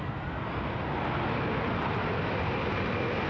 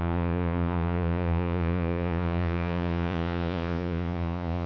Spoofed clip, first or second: second